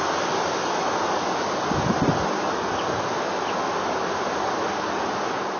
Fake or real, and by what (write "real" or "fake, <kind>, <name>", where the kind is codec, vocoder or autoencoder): real